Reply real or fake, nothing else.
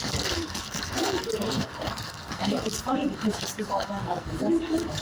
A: fake